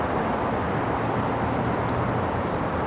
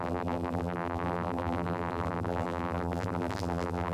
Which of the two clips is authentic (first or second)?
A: first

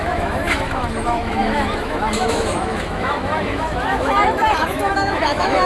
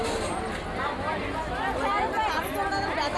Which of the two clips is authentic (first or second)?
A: second